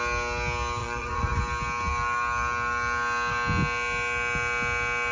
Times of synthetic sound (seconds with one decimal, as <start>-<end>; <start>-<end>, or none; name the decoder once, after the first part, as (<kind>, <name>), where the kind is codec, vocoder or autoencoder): 0.8-1.4 (vocoder, Vocos)